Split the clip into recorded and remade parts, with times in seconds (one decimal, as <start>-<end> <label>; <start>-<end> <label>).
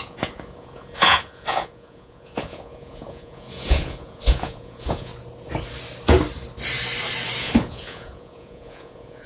0.0-5.1 remade; 5.1-7.4 recorded; 7.4-9.3 remade